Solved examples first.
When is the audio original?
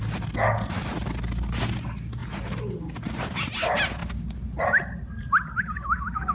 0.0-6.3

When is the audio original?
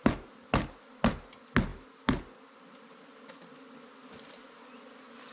0.0-5.3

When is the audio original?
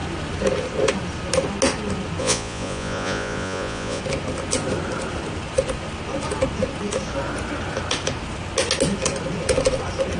0.0-2.2; 4.0-10.2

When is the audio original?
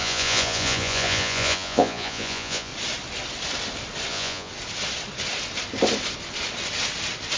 2.7-4.1; 4.5-7.4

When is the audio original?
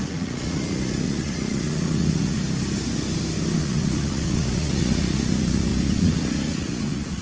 2.4-3.6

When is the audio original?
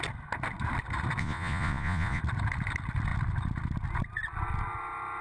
0.0-1.2; 2.2-5.2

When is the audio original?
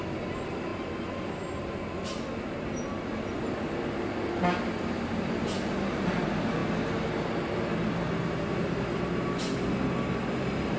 0.0-10.8